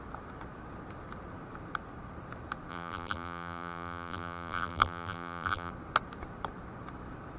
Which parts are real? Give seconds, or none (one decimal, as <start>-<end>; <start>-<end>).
0.0-2.7; 5.7-7.4